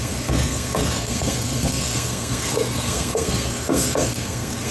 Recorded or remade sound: remade